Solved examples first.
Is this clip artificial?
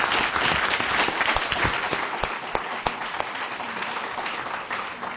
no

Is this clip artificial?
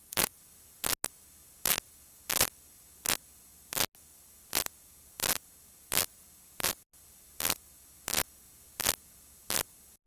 no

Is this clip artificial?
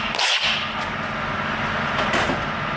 no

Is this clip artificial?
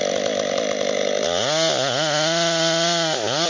no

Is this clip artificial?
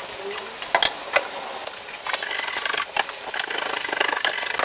no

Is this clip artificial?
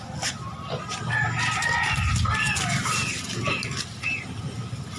no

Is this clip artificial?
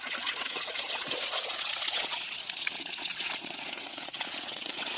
yes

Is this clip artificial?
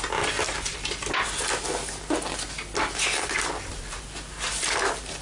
no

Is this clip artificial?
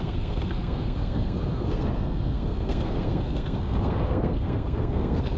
yes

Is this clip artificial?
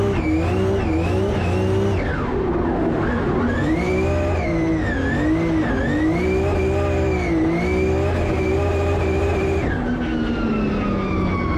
no